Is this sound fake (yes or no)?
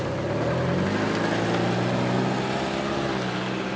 no